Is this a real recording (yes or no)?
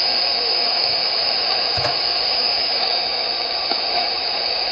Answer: no